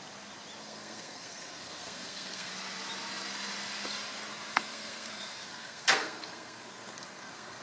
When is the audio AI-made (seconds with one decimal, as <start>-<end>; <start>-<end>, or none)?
0.6-2.5; 4.5-7.6